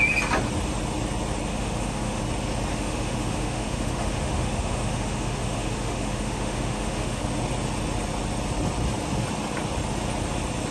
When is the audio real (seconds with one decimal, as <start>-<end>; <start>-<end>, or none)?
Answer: 0.0-1.5; 2.2-2.7; 7.2-10.7